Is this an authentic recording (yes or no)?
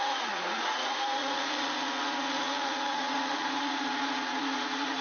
no